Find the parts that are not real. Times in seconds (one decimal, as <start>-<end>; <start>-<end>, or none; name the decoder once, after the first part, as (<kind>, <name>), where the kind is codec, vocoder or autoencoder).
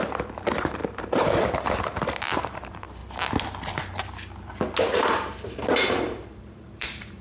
0.0-3.0 (vocoder, BigVGAN v2); 5.0-7.2